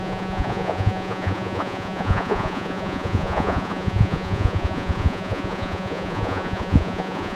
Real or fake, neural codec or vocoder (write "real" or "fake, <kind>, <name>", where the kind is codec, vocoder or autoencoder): fake, vocoder, Vocos